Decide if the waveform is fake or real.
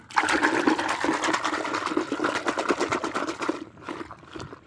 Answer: real